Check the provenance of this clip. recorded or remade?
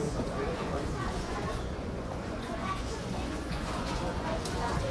remade